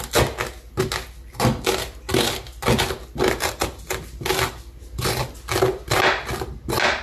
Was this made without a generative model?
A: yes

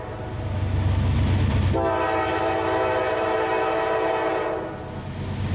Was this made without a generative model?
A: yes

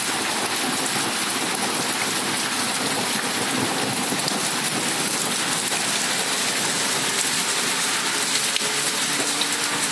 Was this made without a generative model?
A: yes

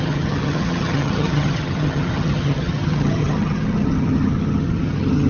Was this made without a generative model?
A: no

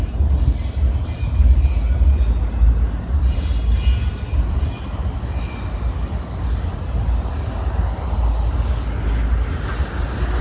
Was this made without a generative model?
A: yes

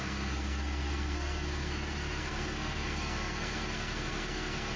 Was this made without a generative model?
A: no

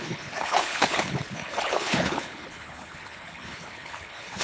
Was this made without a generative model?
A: no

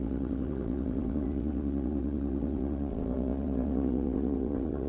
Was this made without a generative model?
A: no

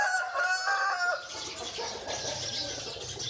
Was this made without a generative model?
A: yes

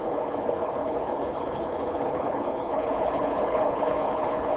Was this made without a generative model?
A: no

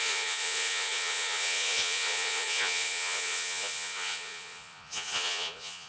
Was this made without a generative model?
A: no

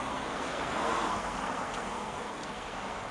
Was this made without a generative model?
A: no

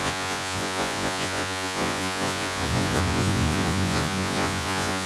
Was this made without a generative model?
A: no